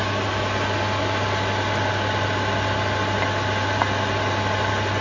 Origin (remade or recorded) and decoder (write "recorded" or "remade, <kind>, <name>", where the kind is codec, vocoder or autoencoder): recorded